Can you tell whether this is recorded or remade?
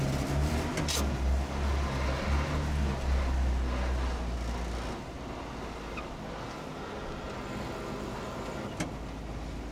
recorded